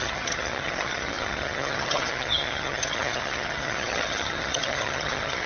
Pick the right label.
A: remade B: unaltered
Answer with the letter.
A